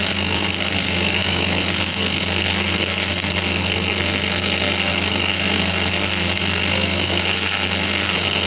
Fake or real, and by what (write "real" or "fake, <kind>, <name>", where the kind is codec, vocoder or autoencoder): fake, codec, SNAC